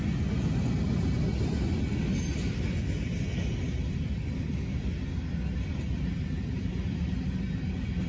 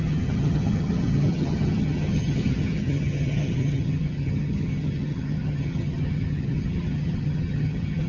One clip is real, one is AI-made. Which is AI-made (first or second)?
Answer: second